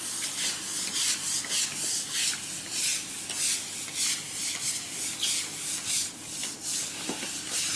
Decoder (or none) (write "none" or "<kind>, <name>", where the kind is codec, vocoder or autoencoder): none